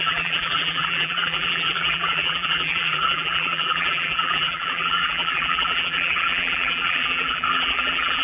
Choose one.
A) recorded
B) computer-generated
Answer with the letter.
B